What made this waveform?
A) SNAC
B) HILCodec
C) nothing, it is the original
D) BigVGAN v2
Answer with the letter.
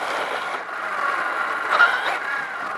C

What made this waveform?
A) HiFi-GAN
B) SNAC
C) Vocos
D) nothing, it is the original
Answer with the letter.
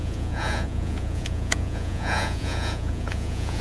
C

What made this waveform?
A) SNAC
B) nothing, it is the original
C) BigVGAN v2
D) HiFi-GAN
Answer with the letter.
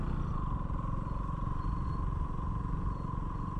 B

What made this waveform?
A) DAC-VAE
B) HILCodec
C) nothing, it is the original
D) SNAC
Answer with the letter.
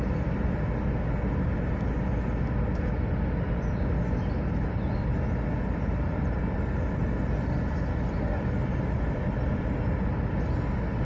C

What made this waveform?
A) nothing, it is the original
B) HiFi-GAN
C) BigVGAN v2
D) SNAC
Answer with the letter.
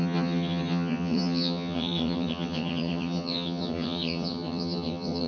B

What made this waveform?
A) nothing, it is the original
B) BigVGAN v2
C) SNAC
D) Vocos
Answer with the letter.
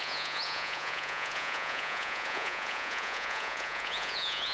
D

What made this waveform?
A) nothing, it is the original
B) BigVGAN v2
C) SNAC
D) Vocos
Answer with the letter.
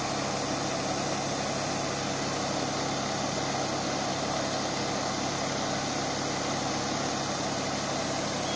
A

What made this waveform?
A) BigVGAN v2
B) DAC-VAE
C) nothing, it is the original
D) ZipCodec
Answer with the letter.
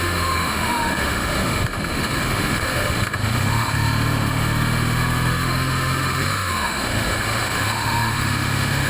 B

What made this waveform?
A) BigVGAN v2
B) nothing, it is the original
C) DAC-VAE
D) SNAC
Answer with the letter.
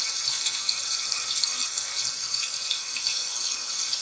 D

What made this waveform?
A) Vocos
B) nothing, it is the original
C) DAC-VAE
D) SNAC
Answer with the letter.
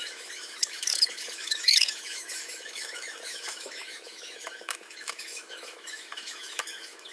C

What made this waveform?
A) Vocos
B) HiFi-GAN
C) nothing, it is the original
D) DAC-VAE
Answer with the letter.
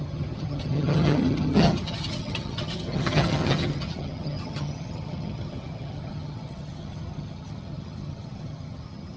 B